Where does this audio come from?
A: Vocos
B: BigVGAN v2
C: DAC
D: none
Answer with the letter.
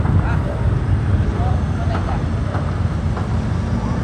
D